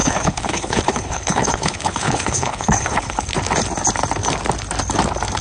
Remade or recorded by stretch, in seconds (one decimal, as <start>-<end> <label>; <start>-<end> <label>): 0.0-3.2 remade; 3.2-5.4 recorded